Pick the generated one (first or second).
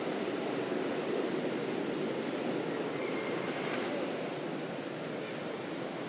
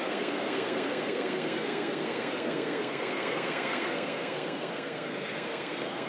second